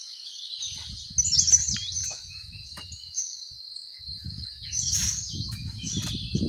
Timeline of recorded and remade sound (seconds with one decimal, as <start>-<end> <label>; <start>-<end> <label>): 0.0-0.5 remade; 0.5-2.0 recorded; 2.0-5.9 remade; 5.9-6.5 recorded